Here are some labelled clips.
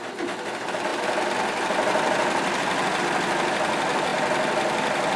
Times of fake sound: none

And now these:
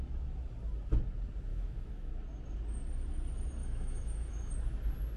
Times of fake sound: 1.5-2.1 (autoencoder, DAC-VAE); 3.6-4.5